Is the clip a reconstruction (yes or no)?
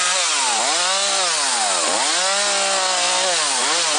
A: no